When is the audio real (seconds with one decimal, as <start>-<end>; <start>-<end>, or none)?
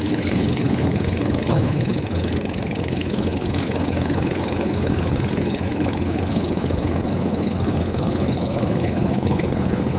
none